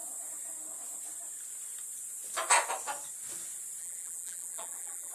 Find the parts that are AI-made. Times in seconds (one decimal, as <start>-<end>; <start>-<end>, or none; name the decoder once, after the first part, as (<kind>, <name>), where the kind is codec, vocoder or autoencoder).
3.8-5.1 (vocoder, BigVGAN v2)